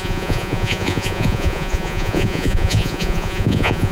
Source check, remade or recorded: remade